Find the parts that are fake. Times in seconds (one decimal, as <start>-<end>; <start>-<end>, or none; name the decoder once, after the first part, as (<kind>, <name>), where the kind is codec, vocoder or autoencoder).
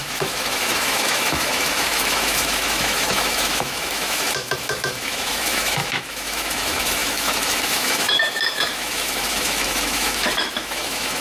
0.0-11.2 (autoencoder, DAC-VAE)